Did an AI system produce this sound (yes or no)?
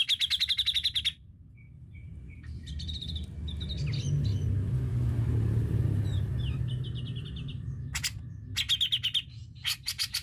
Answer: no